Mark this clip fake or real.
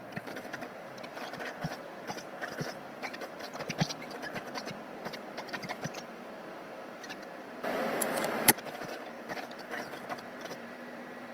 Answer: fake